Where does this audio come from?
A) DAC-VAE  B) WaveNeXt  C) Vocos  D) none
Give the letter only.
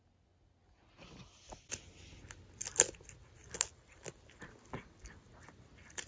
D